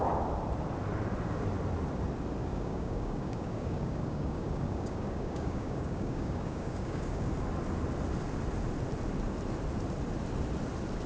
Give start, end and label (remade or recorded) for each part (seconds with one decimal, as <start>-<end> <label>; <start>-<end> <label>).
0.0-2.4 recorded; 2.4-7.3 remade; 7.3-11.1 recorded